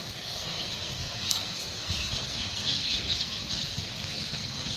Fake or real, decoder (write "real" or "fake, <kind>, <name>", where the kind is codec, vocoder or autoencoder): fake, codec, SNAC